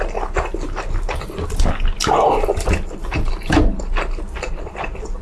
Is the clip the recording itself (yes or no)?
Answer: yes